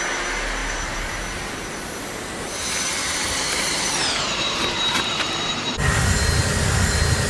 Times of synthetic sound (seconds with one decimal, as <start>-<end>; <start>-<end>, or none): 0.6-1.1; 2.9-5.5